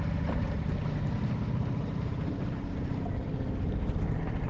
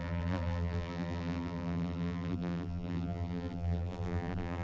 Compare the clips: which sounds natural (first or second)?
first